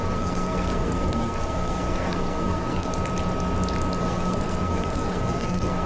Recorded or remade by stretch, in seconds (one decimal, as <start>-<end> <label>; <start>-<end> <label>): 0.0-2.9 remade; 2.9-4.0 recorded; 4.0-5.9 remade